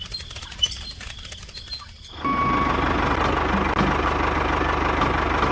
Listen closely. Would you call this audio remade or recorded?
recorded